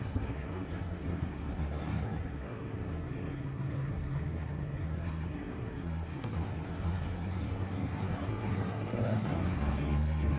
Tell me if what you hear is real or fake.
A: fake